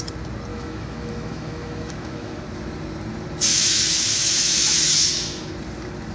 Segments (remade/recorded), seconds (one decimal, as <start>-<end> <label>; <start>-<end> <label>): 0.0-0.5 recorded; 0.5-2.4 remade; 2.4-3.5 recorded; 3.5-5.5 remade; 5.5-6.1 recorded